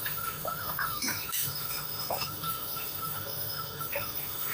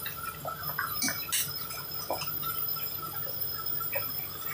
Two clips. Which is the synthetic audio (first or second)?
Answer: first